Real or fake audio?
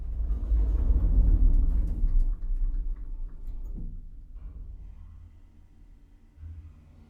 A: real